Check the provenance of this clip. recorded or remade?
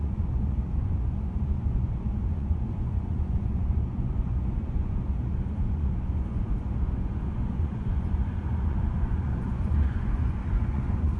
remade